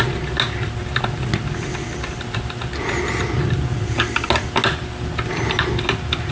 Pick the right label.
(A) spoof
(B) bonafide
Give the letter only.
B